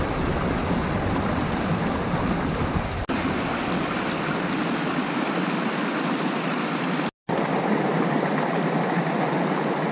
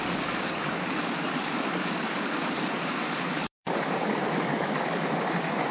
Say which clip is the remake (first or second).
second